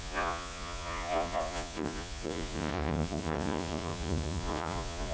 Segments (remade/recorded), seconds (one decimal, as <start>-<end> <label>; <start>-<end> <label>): 0.0-5.1 remade